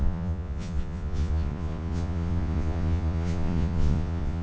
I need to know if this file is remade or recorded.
remade